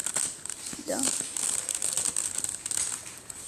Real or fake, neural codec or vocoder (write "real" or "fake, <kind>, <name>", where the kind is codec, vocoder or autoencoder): real